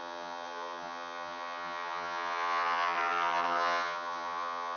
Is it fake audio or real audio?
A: fake